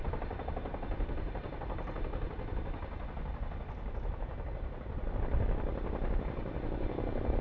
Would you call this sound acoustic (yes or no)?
yes